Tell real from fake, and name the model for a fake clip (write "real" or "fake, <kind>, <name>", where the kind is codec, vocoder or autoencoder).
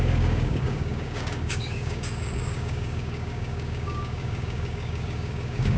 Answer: fake, codec, DAC